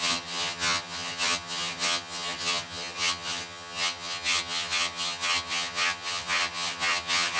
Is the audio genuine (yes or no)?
no